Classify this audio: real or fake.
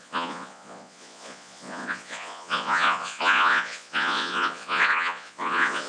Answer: fake